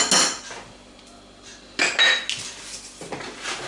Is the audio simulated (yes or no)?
no